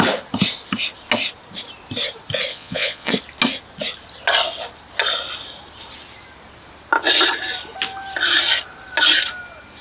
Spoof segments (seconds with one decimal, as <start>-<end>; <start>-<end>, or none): 2.5-3.1